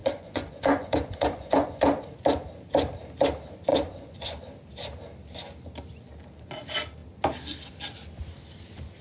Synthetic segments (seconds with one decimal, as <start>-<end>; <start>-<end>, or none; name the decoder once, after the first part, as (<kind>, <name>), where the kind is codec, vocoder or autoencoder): 0.0-1.8 (vocoder, Vocos); 3.7-4.4